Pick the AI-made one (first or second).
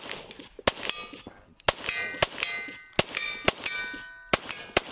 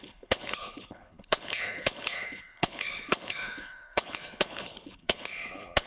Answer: second